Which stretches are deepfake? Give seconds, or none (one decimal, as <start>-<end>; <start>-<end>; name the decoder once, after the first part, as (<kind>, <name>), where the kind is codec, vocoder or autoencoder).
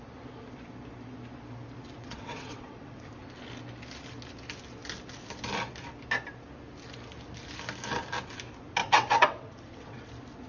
2.0-3.1 (vocoder, WaveNeXt); 8.8-10.1